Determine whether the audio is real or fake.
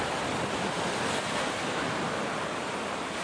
real